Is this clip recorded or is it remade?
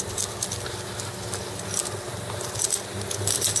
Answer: recorded